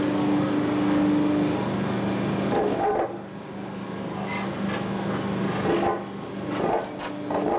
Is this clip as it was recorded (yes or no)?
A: yes